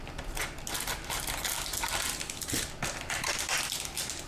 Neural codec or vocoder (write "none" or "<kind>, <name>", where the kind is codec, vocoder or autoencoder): none